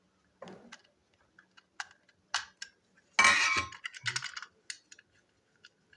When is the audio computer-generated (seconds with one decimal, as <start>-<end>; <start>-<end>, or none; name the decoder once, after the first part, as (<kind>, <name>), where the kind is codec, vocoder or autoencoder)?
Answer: none